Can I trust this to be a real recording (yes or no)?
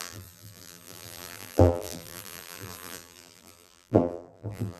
no